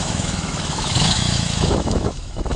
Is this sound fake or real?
fake